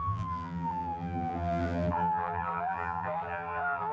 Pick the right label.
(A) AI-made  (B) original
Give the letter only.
A